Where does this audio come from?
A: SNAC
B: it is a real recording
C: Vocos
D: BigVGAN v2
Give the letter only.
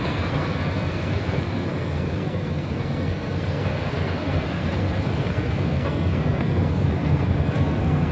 A